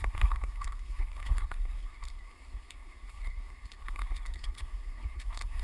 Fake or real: fake